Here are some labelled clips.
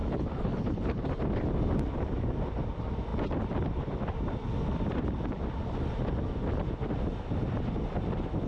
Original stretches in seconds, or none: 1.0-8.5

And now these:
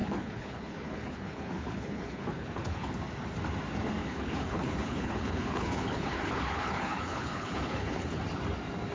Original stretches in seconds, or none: 2.9-4.0; 8.2-8.9

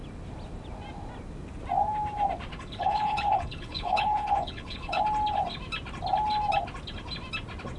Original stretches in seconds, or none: 0.0-2.5; 5.0-7.8

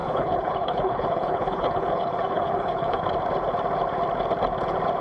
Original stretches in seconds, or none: 3.0-5.0

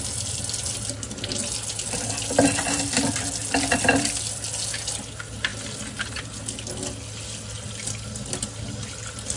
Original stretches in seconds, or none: 0.0-9.4

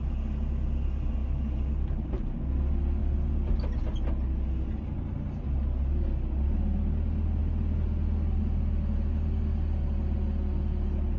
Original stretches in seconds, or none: 0.0-11.2

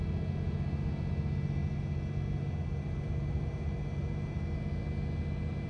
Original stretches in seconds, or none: 0.0-5.7

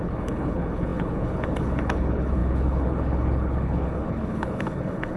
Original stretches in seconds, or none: none